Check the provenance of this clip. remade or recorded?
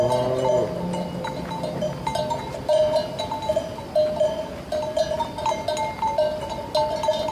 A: recorded